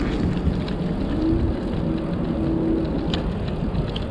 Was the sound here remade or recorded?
recorded